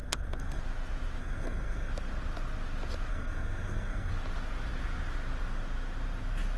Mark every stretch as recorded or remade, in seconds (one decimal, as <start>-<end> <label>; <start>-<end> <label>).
0.0-0.6 remade; 0.6-1.2 recorded; 1.2-1.9 remade; 1.9-3.1 recorded; 3.1-4.1 remade; 4.1-6.6 recorded